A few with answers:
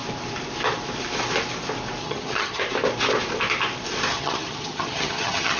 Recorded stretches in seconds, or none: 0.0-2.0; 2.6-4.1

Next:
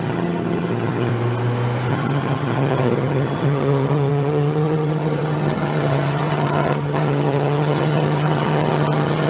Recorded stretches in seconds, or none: 1.1-1.9